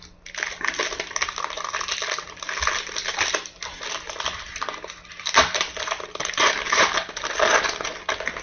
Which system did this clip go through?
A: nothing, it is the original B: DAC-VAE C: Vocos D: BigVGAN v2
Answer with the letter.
A